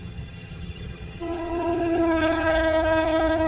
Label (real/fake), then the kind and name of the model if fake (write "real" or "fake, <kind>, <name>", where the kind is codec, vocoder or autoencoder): fake, vocoder, HiFi-GAN